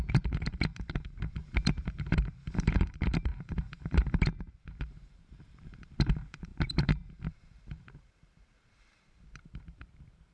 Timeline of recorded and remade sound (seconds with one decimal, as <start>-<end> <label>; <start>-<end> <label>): 0.0-10.3 remade